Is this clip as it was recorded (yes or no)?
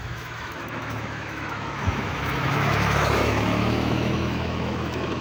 no